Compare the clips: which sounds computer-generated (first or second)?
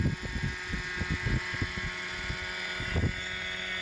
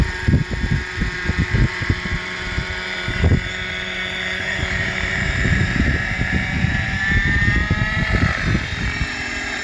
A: second